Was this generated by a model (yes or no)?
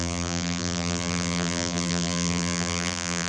yes